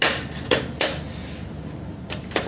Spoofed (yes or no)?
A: no